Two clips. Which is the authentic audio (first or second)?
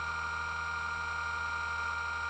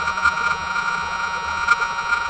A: first